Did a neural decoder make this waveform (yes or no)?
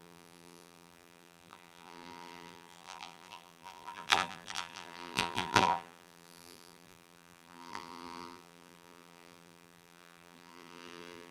yes